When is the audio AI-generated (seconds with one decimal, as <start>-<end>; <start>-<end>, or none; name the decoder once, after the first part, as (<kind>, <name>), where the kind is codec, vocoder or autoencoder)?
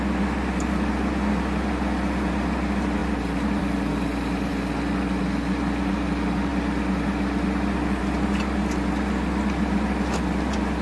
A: none